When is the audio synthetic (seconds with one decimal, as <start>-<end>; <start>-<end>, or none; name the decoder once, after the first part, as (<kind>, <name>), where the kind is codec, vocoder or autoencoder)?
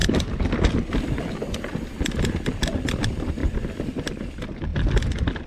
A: 0.0-1.2 (vocoder, BigVGAN v2); 3.4-4.1; 4.7-5.5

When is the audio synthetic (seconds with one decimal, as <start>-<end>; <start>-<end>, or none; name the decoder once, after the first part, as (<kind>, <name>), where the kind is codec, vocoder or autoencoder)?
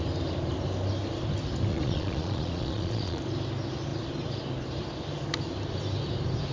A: 1.7-3.2 (vocoder, Vocos)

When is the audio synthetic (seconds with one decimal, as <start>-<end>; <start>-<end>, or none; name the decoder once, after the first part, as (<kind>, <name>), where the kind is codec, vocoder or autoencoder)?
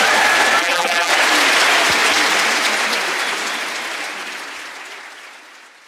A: 0.6-1.1 (vocoder, BigVGAN v2)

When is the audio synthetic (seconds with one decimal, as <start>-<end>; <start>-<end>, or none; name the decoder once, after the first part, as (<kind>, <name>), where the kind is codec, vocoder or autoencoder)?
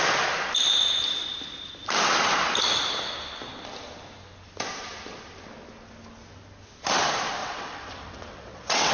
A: 7.4-8.9 (vocoder, WaveNeXt)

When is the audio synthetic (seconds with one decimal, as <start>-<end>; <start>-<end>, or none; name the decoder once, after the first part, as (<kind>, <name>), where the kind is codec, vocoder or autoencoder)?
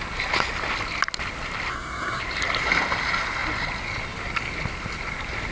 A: 1.7-2.2 (codec, SNAC)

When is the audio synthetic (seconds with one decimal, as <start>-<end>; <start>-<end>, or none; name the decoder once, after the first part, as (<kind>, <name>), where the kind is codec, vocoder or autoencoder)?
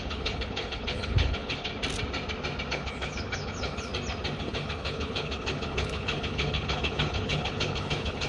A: 0.0-1.7 (codec, HILCodec); 2.7-3.9; 4.4-8.3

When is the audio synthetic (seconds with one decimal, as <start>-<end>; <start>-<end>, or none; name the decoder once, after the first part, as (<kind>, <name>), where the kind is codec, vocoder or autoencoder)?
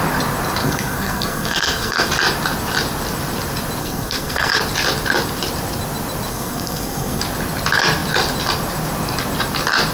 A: 0.6-2.1 (codec, SNAC); 3.8-4.6; 6.3-7.2